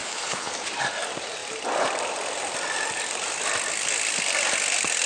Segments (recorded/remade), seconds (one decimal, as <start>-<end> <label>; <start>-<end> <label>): 0.0-0.5 remade; 0.5-5.1 recorded